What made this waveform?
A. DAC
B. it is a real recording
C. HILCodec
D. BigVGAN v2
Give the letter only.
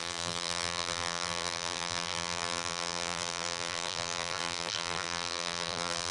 D